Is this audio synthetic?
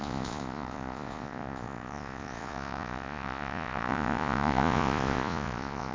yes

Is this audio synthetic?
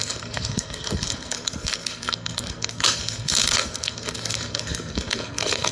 yes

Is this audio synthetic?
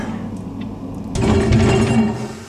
no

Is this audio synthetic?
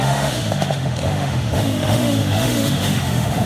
yes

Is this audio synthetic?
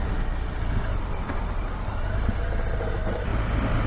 no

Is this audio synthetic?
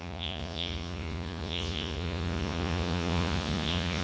yes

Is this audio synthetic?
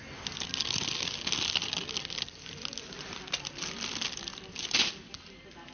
no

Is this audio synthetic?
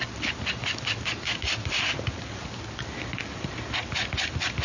no